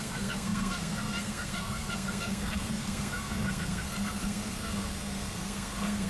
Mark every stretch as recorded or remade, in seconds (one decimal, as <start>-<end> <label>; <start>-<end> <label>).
0.0-6.1 remade